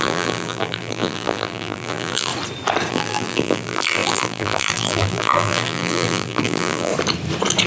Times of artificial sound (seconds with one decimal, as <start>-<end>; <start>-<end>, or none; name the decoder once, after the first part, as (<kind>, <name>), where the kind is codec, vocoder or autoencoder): 0.0-2.3 (vocoder, BigVGAN v2); 2.9-6.9